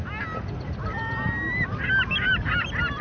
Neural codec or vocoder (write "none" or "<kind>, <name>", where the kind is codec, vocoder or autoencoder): none